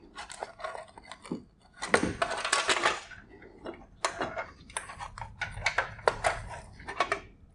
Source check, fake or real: real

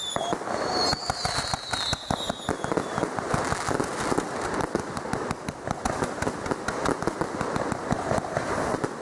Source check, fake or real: real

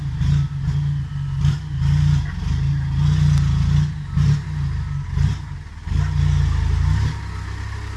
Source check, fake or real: real